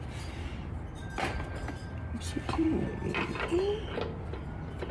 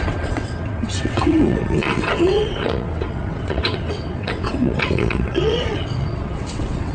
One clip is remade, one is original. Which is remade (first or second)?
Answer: second